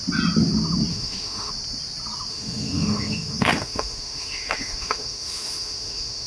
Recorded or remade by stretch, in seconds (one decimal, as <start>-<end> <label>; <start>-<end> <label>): 0.0-0.9 recorded; 0.9-1.5 remade; 1.5-2.3 recorded; 2.3-6.3 remade